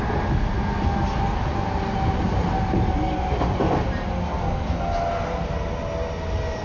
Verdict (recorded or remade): recorded